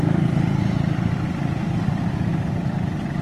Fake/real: fake